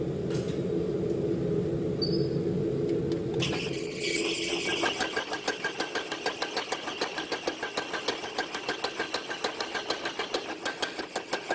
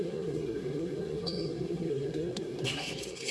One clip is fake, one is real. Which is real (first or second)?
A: first